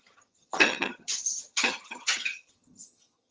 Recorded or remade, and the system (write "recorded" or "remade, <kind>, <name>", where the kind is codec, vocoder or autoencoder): remade, vocoder, HiFi-GAN